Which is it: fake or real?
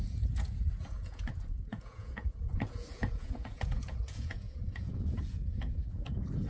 fake